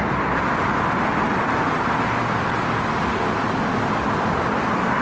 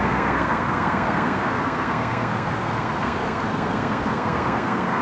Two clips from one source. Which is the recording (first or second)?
first